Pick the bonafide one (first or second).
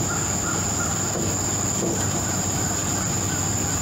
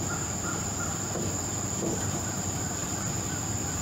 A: first